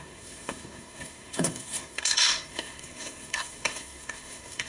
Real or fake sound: fake